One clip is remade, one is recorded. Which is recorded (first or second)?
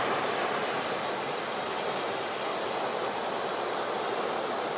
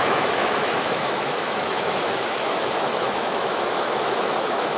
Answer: first